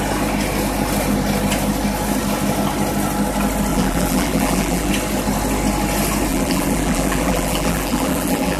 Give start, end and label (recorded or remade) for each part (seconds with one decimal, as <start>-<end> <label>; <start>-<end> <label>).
0.0-3.7 recorded; 3.7-4.9 remade; 4.9-6.3 recorded; 6.3-8.6 remade